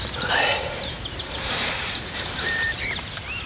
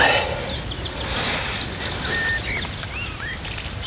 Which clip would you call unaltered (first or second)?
second